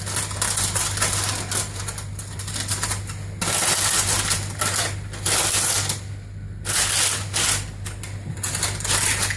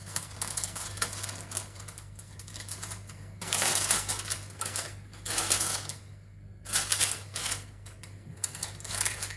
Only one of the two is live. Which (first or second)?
first